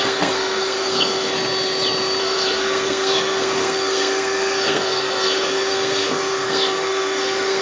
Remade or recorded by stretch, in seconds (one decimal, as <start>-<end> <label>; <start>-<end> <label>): 0.0-1.3 remade; 1.3-2.2 recorded; 2.2-7.6 remade